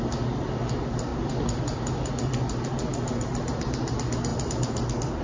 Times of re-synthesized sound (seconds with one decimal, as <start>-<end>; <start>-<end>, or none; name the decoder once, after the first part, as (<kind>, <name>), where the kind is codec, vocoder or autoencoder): 1.1-2.1 (vocoder, BigVGAN v2)